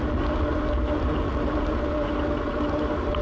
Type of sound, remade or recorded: recorded